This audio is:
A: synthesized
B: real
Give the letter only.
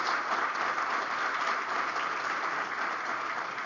B